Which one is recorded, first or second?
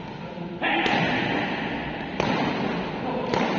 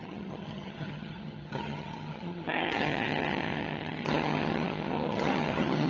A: first